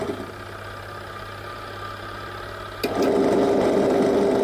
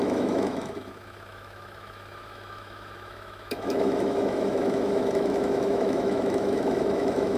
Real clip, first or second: first